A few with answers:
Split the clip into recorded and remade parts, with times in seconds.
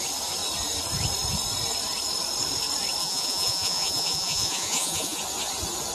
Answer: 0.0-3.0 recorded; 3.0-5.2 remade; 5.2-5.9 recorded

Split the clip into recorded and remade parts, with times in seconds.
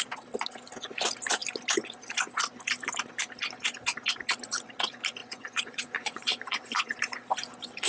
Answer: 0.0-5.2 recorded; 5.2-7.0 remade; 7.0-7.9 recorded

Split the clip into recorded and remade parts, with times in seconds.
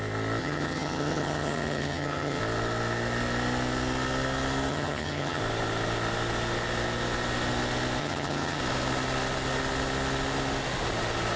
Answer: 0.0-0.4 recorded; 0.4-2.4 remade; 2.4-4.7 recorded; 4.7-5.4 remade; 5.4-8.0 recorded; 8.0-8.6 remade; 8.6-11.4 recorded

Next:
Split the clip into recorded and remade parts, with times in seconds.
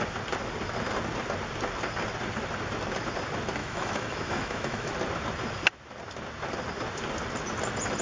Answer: 0.0-3.6 recorded; 3.6-4.9 remade; 4.9-8.0 recorded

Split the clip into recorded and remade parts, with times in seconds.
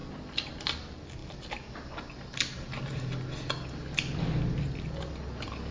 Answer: 0.0-5.7 recorded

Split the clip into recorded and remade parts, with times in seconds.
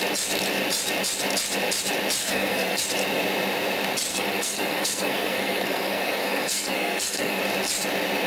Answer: 0.0-2.2 recorded; 2.2-2.8 remade; 2.8-4.1 recorded; 4.1-7.4 remade; 7.4-8.3 recorded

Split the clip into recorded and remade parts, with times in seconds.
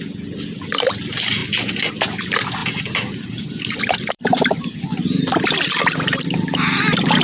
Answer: 0.0-2.6 recorded; 2.6-5.7 remade; 5.7-7.2 recorded